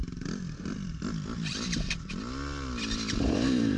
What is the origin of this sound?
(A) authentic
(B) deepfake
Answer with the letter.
B